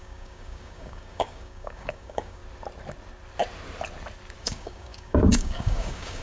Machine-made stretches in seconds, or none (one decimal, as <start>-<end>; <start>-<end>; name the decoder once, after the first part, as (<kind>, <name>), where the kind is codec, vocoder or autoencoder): 0.0-2.4 (codec, DAC); 4.4-6.2